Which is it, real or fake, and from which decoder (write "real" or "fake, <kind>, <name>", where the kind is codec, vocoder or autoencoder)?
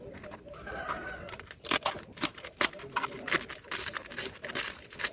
real